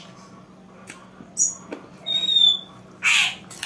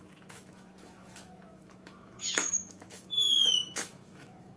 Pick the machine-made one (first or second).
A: second